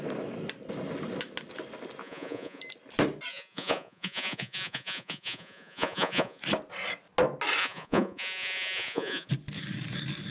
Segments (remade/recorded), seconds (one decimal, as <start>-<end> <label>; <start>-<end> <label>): 0.0-2.0 recorded; 2.0-2.6 remade; 2.6-3.3 recorded; 3.3-6.4 remade; 6.4-7.6 recorded; 7.6-9.3 remade; 9.3-10.3 recorded